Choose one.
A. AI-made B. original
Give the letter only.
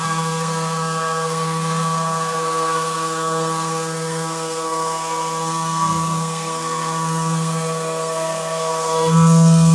A